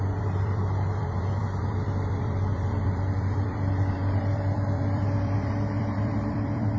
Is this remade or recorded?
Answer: remade